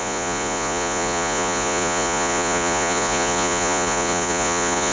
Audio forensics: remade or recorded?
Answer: remade